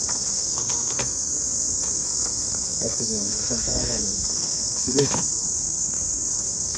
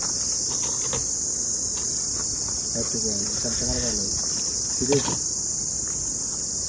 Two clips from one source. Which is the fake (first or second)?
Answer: first